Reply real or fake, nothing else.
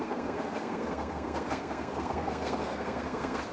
fake